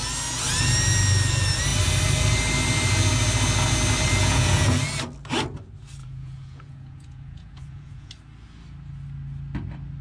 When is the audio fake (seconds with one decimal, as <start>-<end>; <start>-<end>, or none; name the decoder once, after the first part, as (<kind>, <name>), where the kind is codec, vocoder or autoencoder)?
4.2-4.8 (vocoder, Vocos); 6.0-8.1

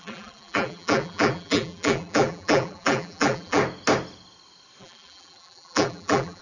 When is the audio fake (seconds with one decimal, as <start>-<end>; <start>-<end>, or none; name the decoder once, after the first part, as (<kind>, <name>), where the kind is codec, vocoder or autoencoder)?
0.0-3.6 (vocoder, BigVGAN v2); 4.8-6.4

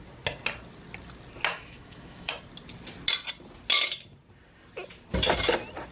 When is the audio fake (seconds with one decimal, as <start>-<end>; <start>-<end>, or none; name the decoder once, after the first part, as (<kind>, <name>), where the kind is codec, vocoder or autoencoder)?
1.5-2.3 (autoencoder, DAC-VAE)

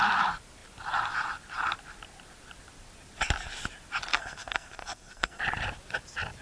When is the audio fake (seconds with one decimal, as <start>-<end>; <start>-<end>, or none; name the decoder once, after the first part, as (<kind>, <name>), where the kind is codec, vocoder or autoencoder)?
4.1-5.4 (codec, SNAC)

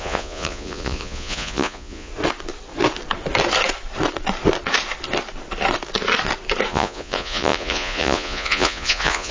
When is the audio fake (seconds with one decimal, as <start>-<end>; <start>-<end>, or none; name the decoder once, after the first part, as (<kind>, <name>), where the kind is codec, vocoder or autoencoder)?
0.0-2.1 (vocoder, Vocos); 6.7-9.3

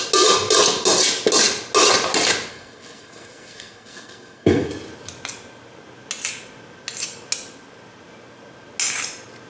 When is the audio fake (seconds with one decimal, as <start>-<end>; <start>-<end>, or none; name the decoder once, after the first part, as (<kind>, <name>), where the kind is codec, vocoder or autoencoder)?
2.5-4.7 (codec, SNAC)